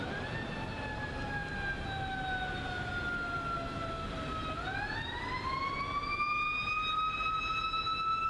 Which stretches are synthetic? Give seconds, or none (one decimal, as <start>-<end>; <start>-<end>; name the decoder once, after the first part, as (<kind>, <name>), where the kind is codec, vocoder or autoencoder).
none